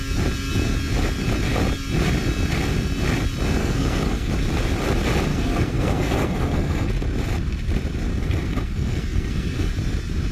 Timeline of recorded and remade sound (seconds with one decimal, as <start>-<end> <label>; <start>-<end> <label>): 0.0-3.6 recorded; 3.6-4.3 remade; 4.3-5.3 recorded; 5.3-6.9 remade; 6.9-8.1 recorded; 8.1-9.7 remade; 9.7-10.3 recorded